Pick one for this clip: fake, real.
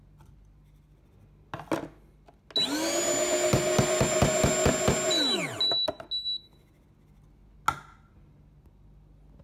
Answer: real